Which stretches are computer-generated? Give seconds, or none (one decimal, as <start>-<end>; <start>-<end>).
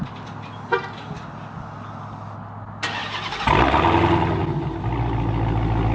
none